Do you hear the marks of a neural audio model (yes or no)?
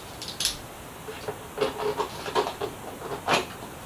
no